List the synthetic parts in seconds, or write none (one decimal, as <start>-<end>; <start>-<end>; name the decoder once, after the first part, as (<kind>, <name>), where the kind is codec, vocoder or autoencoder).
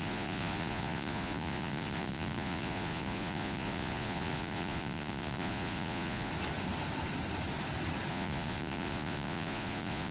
0.0-6.3 (vocoder, Vocos); 8.1-10.1